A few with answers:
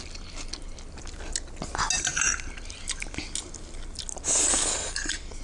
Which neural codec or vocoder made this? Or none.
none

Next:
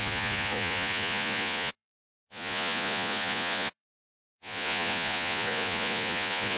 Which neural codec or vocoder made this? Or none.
vocoder, Vocos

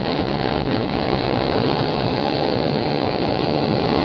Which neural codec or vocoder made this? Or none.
vocoder, WaveNeXt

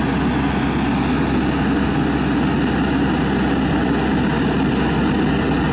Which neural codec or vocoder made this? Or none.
none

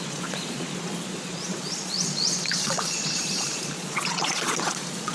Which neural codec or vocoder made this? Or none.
vocoder, Vocos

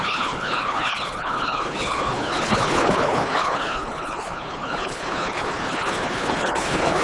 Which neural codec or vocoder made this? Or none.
codec, HILCodec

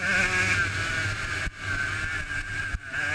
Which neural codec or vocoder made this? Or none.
none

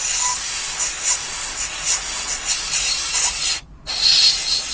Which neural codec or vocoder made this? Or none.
none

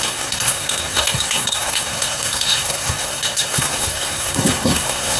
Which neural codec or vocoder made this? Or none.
codec, SNAC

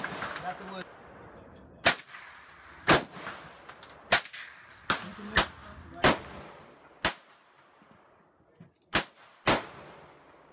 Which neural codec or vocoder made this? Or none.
none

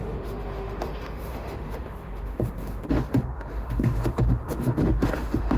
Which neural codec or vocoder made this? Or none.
autoencoder, DAC-VAE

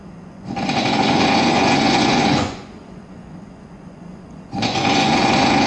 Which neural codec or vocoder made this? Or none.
vocoder, Vocos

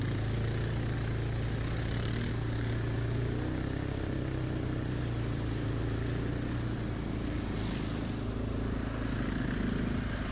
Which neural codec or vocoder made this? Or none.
none